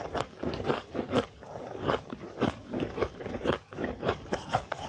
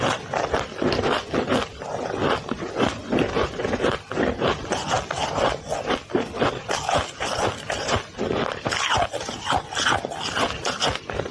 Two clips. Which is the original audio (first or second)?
second